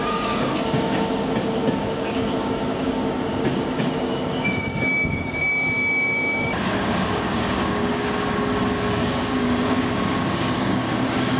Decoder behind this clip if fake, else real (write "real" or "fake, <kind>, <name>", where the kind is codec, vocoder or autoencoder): fake, codec, DAC